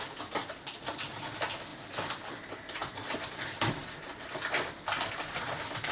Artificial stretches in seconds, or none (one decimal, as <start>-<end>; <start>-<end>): 2.8-4.4